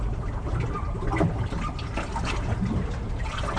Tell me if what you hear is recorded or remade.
recorded